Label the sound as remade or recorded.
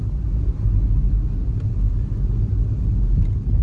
recorded